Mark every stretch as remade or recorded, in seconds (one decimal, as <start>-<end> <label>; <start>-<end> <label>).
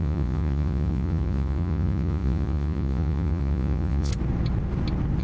0.0-4.1 remade; 4.1-5.2 recorded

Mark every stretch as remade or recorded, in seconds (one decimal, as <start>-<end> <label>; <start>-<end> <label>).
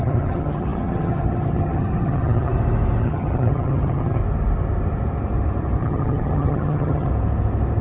0.0-2.5 remade; 2.5-3.0 recorded; 3.0-4.2 remade; 4.2-5.8 recorded; 5.8-7.1 remade; 7.1-7.8 recorded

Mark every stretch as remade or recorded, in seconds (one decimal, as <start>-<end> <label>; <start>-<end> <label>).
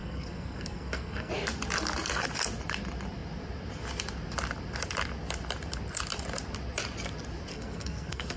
0.0-1.3 remade; 1.3-7.5 recorded; 7.5-8.4 remade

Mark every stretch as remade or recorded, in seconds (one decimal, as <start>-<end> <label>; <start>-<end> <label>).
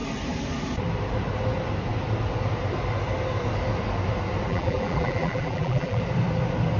0.0-4.5 recorded; 4.5-6.0 remade; 6.0-6.8 recorded